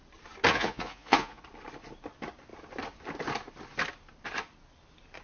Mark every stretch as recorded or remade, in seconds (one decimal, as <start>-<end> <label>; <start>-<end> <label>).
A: 0.0-0.5 recorded; 0.5-1.4 remade; 1.4-5.2 recorded